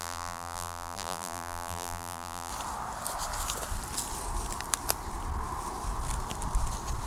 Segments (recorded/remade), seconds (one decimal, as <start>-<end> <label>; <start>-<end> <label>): 0.0-2.5 remade; 2.5-7.1 recorded